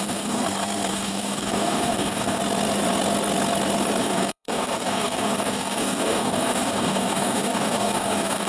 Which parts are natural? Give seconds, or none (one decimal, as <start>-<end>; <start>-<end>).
0.4-0.9; 2.4-4.0